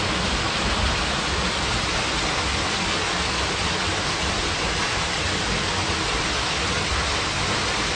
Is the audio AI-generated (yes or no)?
no